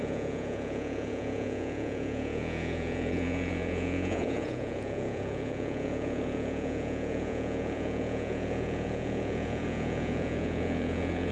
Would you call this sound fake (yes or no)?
yes